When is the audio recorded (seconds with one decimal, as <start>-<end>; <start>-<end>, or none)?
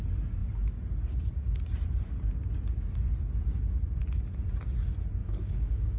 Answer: 0.0-5.2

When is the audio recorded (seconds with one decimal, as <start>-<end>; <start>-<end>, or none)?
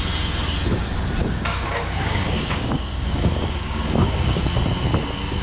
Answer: 0.0-1.2; 4.4-5.4